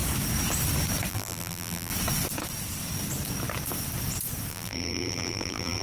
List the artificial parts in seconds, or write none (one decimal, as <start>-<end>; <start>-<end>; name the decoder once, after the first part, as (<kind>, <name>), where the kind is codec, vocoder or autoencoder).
1.1-1.9 (vocoder, BigVGAN v2); 4.5-5.8